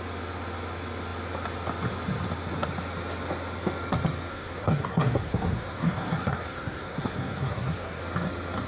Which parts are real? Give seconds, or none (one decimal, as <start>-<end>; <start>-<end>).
0.0-4.3; 8.0-8.7